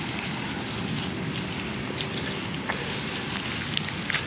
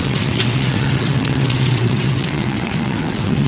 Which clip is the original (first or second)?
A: first